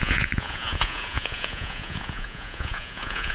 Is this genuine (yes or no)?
no